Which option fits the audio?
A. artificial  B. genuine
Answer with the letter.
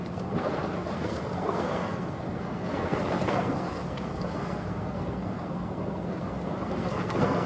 A